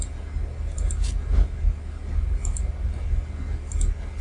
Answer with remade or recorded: recorded